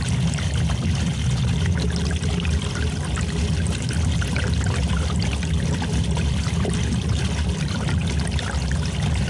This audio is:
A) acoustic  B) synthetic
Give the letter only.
A